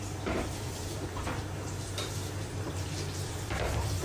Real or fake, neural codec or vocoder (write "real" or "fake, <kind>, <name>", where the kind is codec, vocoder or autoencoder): fake, vocoder, BigVGAN v2